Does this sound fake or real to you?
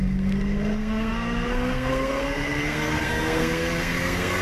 fake